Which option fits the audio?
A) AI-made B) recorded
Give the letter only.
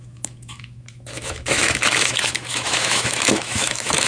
A